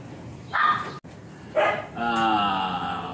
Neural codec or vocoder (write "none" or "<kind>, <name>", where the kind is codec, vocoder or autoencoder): none